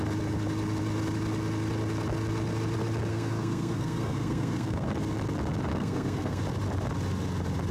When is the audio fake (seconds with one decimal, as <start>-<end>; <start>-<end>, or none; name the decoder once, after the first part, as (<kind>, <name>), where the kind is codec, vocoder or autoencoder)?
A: 3.1-4.9 (codec, SNAC); 5.7-6.4